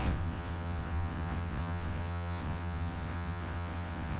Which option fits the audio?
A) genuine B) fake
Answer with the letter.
B